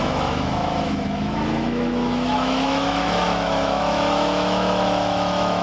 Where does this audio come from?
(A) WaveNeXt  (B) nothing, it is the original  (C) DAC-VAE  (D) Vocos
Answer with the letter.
C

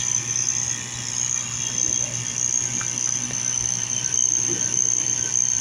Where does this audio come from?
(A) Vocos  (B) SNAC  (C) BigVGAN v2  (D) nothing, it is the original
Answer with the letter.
D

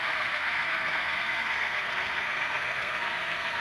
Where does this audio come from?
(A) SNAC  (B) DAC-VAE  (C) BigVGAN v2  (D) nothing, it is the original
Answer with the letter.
A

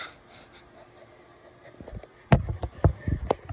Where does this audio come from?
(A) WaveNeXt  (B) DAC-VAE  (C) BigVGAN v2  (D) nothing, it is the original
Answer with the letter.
D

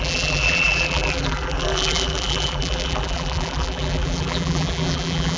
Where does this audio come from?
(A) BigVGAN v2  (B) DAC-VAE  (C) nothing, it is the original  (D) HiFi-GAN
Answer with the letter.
A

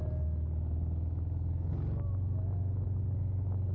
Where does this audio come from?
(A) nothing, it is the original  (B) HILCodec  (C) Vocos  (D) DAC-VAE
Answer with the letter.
A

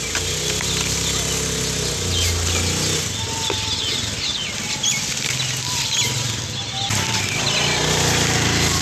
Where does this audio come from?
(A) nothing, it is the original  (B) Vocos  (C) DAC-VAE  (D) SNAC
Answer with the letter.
A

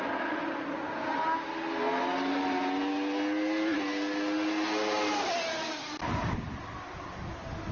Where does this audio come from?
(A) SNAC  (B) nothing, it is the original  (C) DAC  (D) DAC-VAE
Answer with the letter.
B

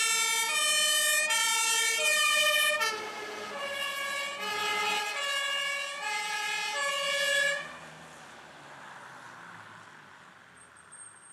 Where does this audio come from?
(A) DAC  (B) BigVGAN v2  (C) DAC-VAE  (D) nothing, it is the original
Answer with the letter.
D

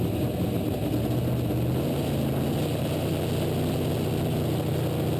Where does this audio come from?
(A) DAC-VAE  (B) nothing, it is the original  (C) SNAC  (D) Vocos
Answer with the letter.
B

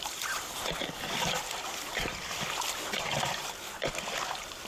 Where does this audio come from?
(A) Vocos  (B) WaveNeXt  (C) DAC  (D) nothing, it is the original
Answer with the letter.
D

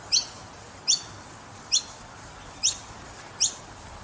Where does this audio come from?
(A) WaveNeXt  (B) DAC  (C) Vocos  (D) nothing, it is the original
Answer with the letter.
D